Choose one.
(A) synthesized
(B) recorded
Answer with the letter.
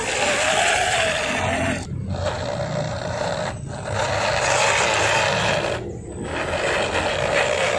B